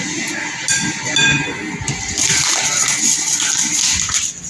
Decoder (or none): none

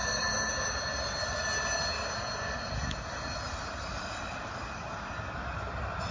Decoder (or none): none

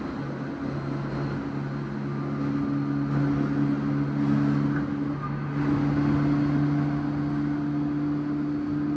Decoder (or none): none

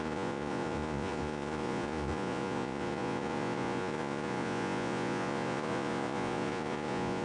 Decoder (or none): vocoder, Vocos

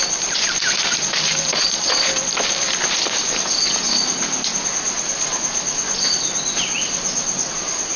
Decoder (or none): none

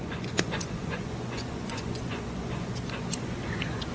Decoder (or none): vocoder, Vocos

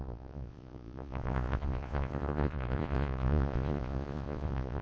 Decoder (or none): vocoder, Vocos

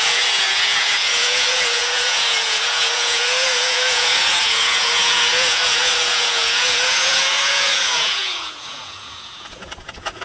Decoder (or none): vocoder, Vocos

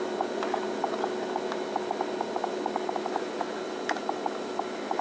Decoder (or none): none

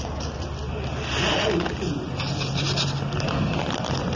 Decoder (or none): none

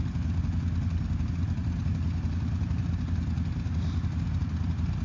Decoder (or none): none